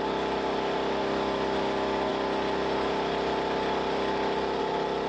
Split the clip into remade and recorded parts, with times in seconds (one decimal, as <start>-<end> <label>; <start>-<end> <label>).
0.0-5.1 recorded